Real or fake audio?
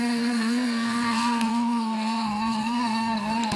fake